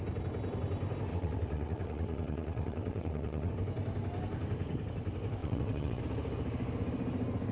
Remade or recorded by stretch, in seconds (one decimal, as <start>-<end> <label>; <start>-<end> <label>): 0.0-1.1 recorded; 1.1-3.5 remade; 3.5-5.4 recorded; 5.4-6.0 remade; 6.0-7.5 recorded